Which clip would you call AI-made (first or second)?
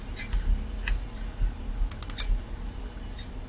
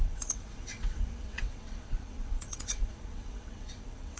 second